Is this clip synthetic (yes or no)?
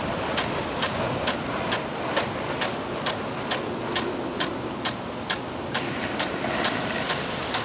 no